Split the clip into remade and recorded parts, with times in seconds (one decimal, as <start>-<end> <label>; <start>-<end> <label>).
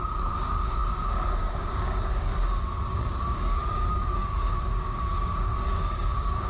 0.0-0.8 remade; 0.8-1.4 recorded; 1.4-2.3 remade; 2.3-2.9 recorded; 2.9-6.5 remade